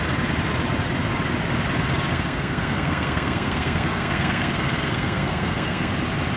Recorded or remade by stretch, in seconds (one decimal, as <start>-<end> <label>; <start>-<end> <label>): 0.0-2.1 recorded; 2.1-5.9 remade; 5.9-6.4 recorded